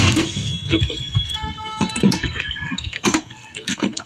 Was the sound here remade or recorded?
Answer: remade